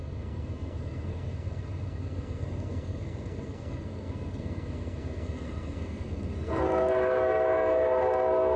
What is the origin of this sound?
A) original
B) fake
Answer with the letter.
B